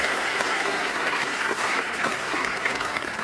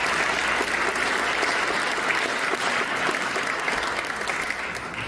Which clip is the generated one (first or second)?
first